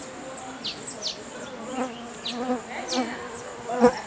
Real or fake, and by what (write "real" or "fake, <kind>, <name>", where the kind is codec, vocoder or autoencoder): real